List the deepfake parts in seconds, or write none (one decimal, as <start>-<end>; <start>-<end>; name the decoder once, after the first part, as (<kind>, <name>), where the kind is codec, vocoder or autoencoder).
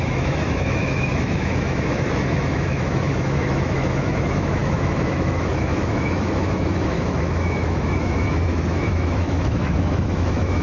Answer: 0.0-10.6 (autoencoder, DAC-VAE)